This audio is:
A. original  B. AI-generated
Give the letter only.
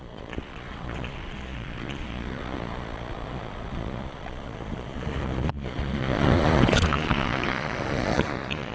B